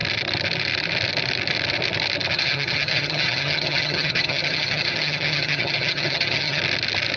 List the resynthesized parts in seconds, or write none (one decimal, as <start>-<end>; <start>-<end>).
2.3-6.6